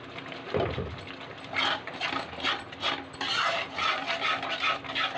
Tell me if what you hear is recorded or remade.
recorded